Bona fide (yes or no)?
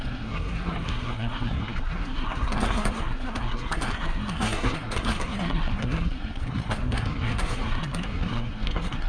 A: no